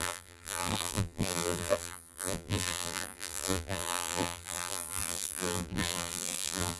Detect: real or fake fake